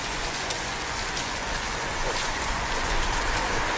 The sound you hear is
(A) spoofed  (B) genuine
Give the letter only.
A